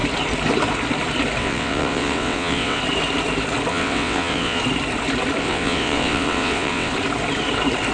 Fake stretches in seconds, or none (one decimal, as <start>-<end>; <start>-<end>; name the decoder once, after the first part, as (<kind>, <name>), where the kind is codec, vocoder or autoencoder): 1.4-2.8 (vocoder, WaveNeXt); 3.7-4.6; 5.4-6.9